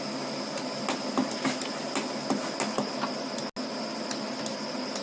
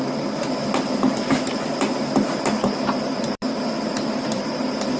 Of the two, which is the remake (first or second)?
second